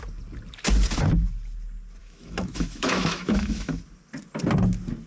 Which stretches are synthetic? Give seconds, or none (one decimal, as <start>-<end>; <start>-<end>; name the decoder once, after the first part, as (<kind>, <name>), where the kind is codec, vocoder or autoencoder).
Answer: 2.0-3.8 (autoencoder, DAC-VAE)